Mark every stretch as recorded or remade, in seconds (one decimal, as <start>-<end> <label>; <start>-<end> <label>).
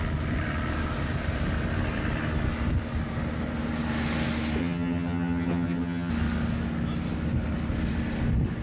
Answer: 0.0-4.6 recorded; 4.6-6.1 remade; 6.1-8.6 recorded